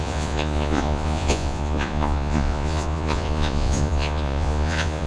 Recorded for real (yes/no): no